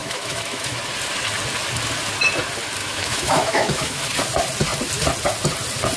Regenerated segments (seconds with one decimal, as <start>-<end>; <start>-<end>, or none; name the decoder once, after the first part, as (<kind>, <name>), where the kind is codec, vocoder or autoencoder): 0.0-0.8 (autoencoder, DAC-VAE); 2.8-4.0